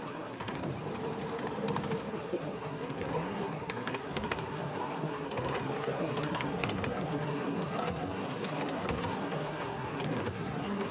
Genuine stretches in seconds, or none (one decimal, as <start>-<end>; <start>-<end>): 0.7-2.1